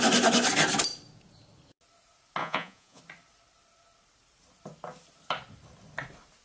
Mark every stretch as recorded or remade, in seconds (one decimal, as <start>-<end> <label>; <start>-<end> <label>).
0.0-2.4 recorded; 2.4-3.0 remade; 3.0-6.4 recorded